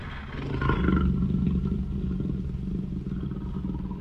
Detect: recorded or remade recorded